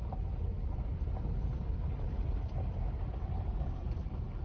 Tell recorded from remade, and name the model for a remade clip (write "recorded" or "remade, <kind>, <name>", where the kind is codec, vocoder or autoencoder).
recorded